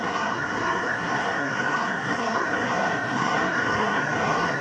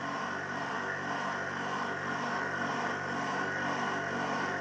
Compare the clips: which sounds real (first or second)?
second